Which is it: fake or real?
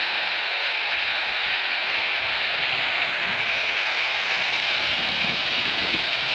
fake